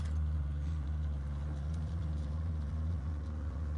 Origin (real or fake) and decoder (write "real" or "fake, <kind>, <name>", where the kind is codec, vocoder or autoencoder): fake, vocoder, Vocos